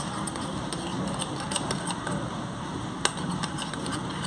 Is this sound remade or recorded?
recorded